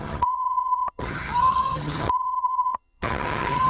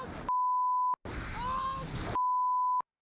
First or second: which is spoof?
first